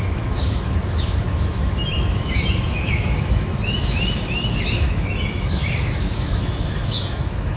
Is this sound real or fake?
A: fake